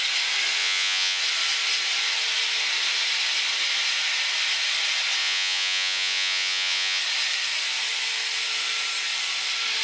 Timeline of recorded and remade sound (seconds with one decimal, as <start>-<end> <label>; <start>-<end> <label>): 0.0-0.6 recorded; 0.6-1.2 remade; 1.2-5.2 recorded; 5.2-7.0 remade; 7.0-9.8 recorded